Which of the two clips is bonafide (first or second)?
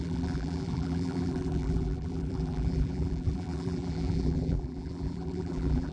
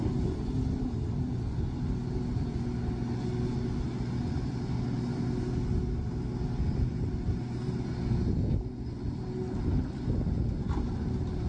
second